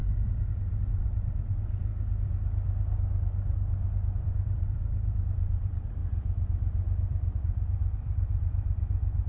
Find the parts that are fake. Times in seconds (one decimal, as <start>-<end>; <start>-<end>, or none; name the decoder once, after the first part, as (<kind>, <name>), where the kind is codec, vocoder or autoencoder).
0.0-1.9 (vocoder, BigVGAN v2); 4.2-6.0; 7.4-9.3